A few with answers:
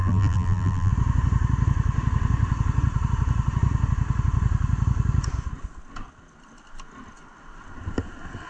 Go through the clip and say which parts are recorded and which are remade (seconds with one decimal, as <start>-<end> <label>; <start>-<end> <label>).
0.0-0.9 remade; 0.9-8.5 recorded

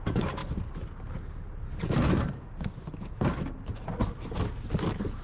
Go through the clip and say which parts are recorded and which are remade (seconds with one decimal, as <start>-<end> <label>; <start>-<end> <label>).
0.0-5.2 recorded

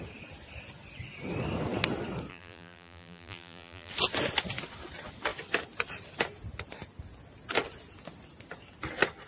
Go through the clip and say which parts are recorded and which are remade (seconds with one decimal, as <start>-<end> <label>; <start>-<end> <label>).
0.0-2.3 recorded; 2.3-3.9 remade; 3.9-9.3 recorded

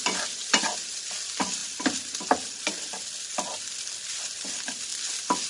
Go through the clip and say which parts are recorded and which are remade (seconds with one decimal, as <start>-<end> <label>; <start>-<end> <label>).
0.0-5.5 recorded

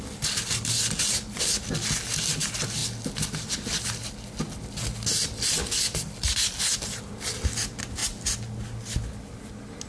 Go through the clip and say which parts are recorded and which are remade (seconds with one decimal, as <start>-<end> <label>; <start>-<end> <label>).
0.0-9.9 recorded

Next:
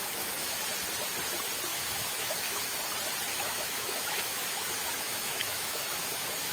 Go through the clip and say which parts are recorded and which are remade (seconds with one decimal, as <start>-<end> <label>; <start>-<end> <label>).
0.0-0.6 remade; 0.6-1.7 recorded; 1.7-2.8 remade; 2.8-3.3 recorded; 3.3-6.5 remade

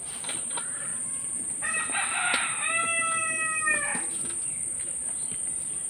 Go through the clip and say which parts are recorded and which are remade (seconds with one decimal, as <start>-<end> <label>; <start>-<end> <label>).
0.0-0.9 remade; 0.9-1.6 recorded; 1.6-2.9 remade; 2.9-4.5 recorded; 4.5-5.9 remade

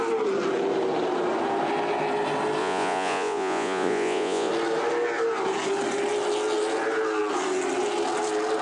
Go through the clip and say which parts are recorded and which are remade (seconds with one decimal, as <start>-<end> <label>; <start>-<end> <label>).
0.0-2.6 recorded; 2.6-4.5 remade; 4.5-8.6 recorded